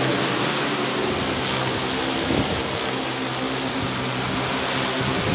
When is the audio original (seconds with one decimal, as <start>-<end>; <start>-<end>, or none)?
0.0-5.3